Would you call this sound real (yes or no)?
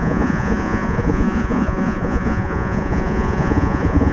no